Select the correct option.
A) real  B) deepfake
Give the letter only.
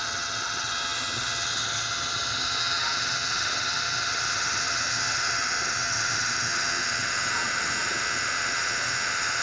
B